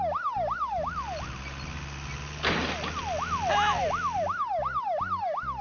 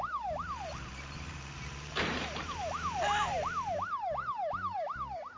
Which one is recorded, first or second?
first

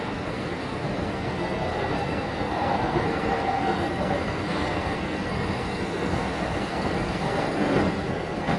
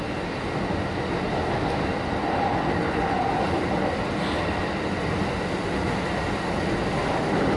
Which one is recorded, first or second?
second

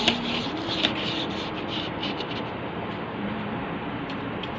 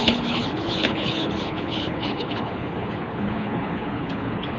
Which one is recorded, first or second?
first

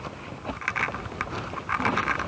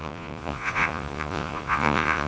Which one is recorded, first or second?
first